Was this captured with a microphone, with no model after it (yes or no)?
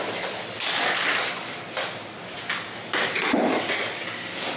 yes